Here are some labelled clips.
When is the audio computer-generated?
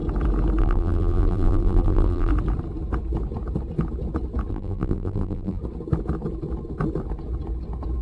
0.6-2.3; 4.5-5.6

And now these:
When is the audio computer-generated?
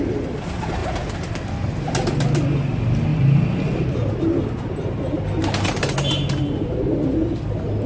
0.8-1.3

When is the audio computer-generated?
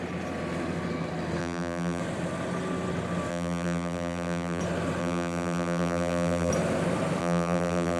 1.4-2.0; 3.3-4.6; 5.0-6.5; 7.2-8.0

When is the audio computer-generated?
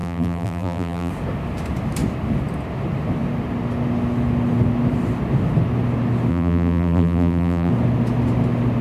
0.0-1.1; 6.3-7.7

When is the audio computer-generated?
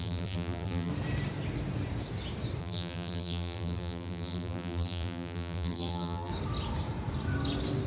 0.0-0.9; 2.6-6.3